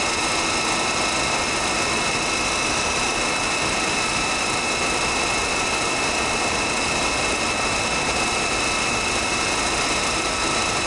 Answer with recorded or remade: remade